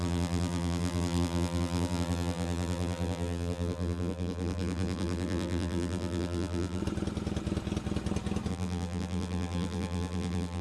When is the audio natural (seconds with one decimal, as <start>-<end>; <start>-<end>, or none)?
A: 6.8-8.5